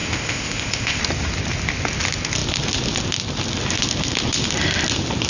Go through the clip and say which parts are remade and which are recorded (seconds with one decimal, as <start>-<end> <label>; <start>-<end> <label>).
0.0-1.0 remade; 1.0-5.3 recorded